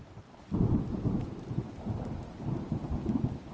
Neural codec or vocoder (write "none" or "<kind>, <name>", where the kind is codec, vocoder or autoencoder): none